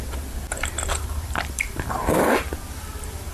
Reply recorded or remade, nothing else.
remade